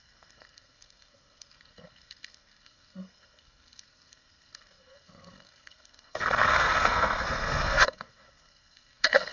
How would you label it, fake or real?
fake